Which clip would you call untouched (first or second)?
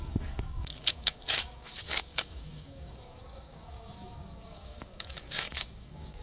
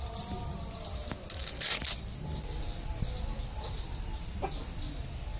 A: second